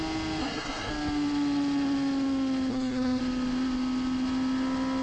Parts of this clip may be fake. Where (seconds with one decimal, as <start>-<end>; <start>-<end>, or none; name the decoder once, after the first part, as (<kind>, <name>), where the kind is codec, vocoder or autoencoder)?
0.4-0.9 (codec, SNAC); 2.7-3.2